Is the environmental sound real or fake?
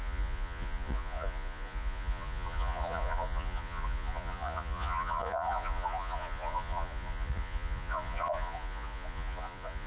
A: fake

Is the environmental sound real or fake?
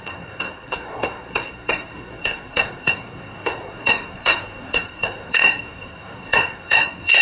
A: fake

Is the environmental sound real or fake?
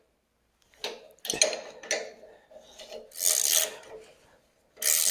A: real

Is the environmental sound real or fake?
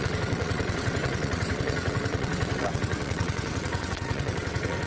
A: fake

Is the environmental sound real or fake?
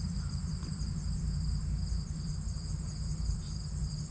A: real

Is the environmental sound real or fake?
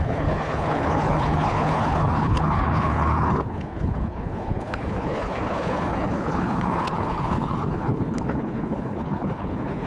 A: fake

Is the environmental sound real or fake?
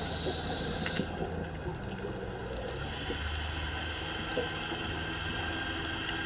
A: real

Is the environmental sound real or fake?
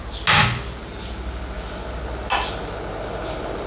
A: real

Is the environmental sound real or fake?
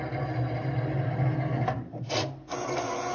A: real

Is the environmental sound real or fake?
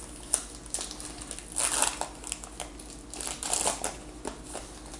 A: real